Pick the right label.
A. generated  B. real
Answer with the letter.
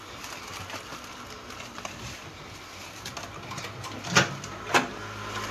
B